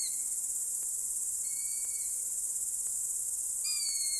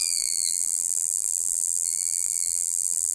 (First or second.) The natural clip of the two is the first